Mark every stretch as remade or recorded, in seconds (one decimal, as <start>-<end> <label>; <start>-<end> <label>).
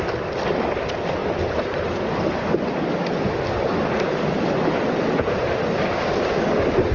0.0-6.9 recorded